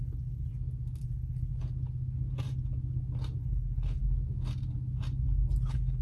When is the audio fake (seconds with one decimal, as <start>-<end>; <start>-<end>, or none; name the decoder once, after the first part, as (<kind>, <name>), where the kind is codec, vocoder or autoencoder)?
0.0-0.5 (codec, HILCodec); 1.0-1.5; 3.4-4.0; 5.6-6.0